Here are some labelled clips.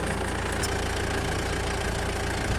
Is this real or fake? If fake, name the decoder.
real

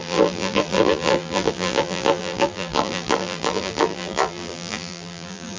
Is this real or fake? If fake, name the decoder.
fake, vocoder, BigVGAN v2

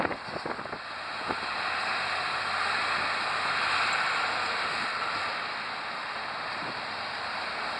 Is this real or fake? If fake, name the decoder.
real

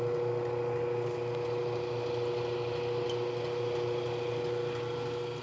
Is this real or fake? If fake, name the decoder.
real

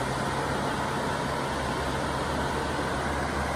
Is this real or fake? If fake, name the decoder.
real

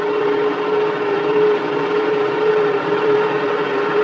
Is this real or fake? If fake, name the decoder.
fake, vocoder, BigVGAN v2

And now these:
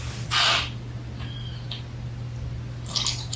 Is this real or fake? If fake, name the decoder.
real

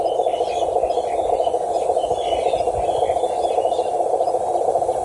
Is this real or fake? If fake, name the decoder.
real